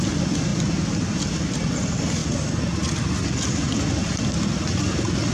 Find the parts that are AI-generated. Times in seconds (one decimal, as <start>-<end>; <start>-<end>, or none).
none